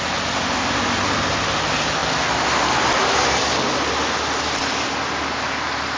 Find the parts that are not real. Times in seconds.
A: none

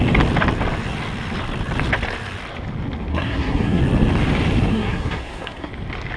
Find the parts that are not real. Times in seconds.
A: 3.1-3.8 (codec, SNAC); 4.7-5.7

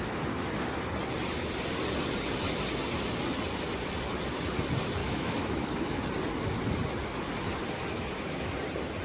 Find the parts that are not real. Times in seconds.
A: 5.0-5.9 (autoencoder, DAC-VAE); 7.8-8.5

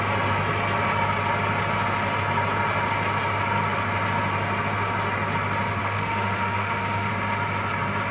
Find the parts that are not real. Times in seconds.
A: 5.8-7.1 (autoencoder, DAC-VAE)